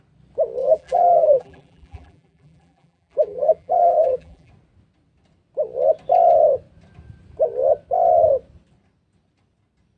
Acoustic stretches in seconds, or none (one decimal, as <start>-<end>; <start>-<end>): 0.0-0.6; 4.5-10.0